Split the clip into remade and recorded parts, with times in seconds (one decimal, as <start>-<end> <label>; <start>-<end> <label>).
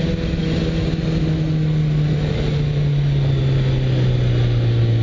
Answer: 0.0-5.0 recorded